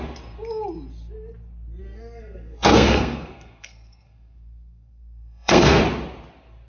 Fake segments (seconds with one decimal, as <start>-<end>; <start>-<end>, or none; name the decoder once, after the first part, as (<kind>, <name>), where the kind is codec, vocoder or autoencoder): 1.8-5.8 (codec, SNAC)